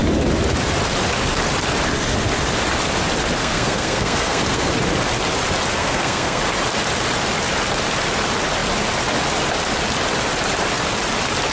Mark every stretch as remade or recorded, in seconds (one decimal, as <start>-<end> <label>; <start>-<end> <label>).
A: 0.0-3.4 recorded; 3.4-4.7 remade; 4.7-5.8 recorded; 5.8-6.4 remade; 6.4-11.5 recorded